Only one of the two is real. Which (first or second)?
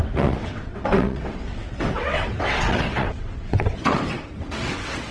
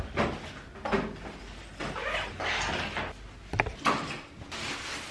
second